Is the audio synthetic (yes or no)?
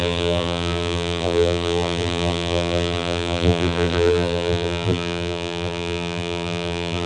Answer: yes